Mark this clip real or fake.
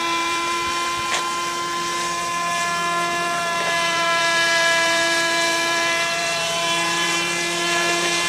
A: fake